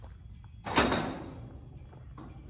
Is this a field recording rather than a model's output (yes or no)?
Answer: yes